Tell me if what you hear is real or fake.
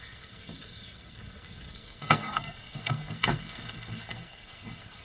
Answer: fake